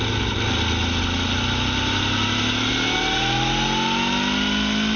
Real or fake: real